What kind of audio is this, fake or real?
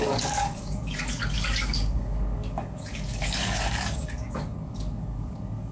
fake